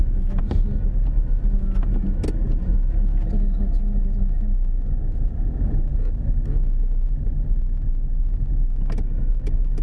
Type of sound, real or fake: real